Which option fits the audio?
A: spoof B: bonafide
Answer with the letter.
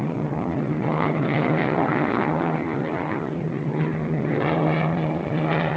A